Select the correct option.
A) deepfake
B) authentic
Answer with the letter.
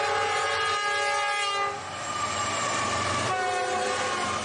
B